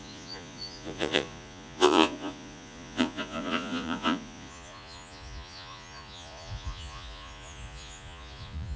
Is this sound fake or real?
fake